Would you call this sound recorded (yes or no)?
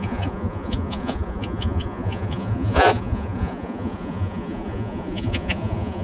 no